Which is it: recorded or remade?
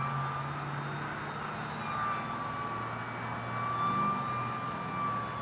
recorded